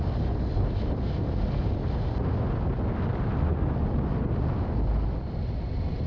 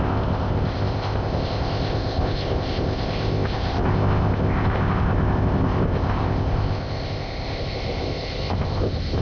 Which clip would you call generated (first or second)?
second